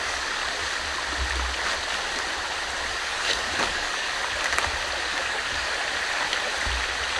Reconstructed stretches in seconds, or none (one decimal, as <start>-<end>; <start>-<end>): 0.0-0.4; 2.9-4.2; 5.0-5.8